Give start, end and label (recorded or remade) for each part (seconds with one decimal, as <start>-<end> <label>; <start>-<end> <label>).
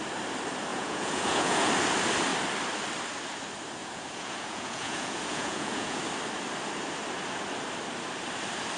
0.0-0.7 recorded; 0.7-1.7 remade; 1.7-3.8 recorded; 3.8-6.0 remade; 6.0-8.8 recorded